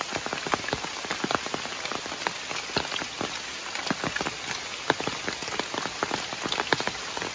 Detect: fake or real real